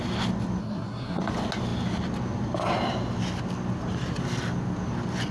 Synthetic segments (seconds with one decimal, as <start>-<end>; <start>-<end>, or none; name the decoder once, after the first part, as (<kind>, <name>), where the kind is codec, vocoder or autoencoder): 0.6-1.2 (codec, SNAC)